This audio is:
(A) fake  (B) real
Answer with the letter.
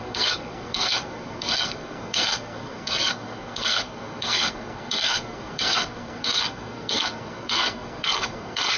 A